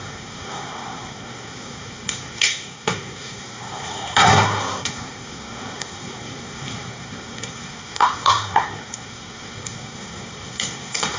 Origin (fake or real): fake